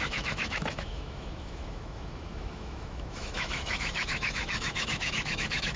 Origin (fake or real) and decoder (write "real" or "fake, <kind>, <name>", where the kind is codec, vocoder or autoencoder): fake, autoencoder, DAC-VAE